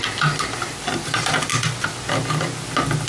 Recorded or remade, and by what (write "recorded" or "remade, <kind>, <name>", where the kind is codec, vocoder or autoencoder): recorded